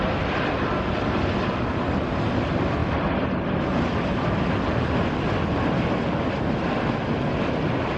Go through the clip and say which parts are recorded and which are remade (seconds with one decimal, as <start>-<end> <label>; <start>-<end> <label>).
0.0-8.0 recorded